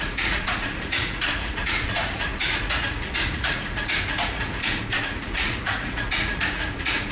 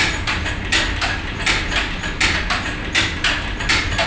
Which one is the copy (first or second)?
first